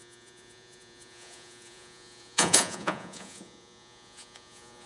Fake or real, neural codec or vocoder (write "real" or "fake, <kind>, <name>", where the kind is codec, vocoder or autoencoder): fake, vocoder, Vocos